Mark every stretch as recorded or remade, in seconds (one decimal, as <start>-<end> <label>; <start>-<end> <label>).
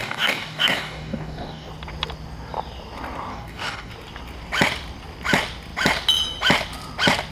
0.0-1.7 remade; 1.7-3.3 recorded; 3.3-3.9 remade; 3.9-7.3 recorded